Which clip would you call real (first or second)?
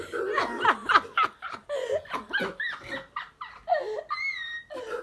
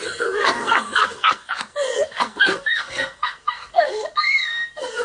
first